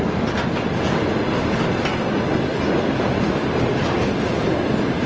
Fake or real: real